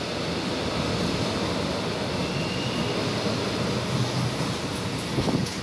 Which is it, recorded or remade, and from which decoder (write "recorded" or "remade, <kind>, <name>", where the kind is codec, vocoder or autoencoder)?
recorded